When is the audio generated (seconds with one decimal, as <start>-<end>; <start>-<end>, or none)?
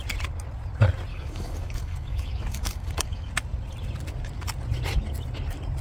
1.1-3.3